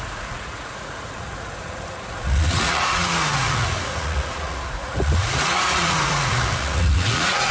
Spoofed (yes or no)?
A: yes